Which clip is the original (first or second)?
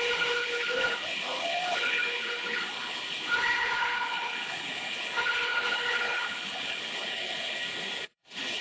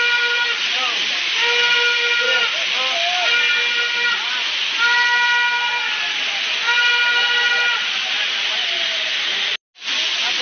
second